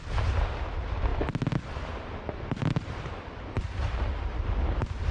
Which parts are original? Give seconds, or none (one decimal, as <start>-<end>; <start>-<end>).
0.0-5.1